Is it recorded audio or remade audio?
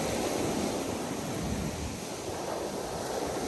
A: recorded